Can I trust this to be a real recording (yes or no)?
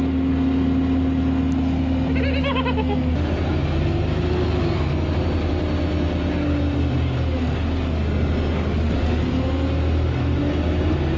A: yes